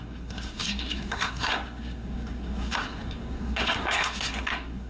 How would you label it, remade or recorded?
remade